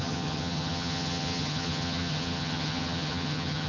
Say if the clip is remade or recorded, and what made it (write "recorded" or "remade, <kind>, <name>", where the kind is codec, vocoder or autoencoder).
remade, vocoder, HiFi-GAN